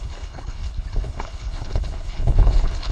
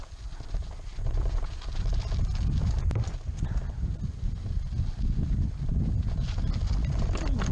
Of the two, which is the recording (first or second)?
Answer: second